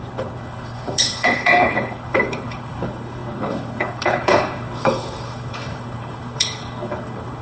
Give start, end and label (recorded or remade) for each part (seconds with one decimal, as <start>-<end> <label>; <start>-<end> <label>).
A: 0.0-7.4 remade